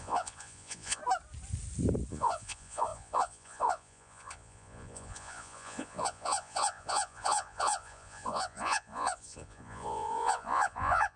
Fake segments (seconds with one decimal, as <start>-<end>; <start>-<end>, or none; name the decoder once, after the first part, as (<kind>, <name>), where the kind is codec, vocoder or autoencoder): 0.0-1.0 (vocoder, Vocos); 2.1-11.2